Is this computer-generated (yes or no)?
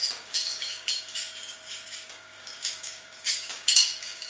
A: yes